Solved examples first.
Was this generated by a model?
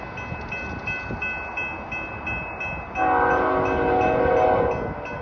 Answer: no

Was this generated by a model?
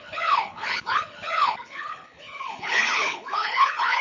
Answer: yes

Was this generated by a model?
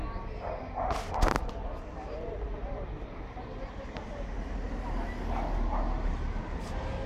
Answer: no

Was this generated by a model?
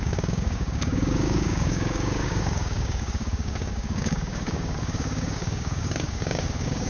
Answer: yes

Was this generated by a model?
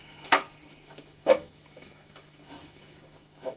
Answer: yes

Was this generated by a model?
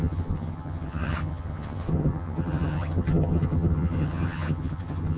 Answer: yes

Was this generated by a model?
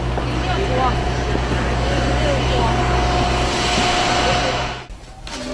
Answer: no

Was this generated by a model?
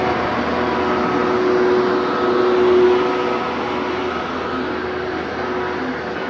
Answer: no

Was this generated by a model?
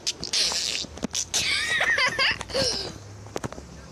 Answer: no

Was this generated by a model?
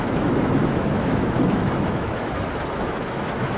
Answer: yes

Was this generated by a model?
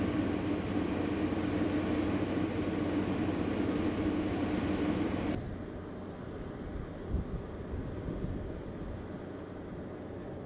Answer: no